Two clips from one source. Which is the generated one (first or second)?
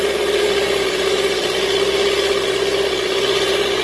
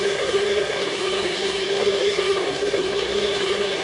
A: second